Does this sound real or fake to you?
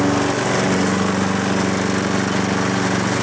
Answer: real